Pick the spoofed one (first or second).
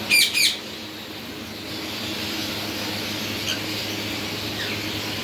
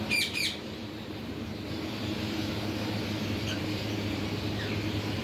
second